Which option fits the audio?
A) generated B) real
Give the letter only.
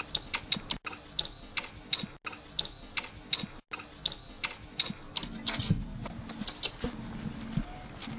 B